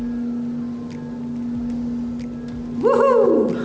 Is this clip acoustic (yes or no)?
yes